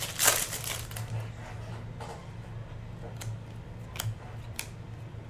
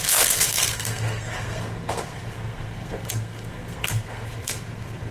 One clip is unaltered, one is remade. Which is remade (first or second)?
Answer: second